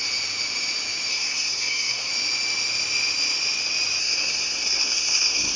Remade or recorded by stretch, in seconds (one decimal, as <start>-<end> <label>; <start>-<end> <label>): 0.0-1.1 recorded; 1.1-2.1 remade; 2.1-4.0 recorded; 4.0-5.6 remade